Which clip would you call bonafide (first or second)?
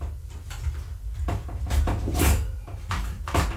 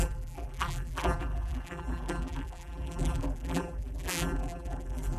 first